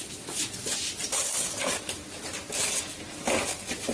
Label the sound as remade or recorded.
recorded